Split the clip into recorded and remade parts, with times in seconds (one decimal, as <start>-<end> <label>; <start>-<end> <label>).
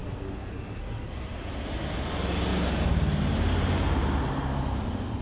0.0-1.4 remade; 1.4-5.2 recorded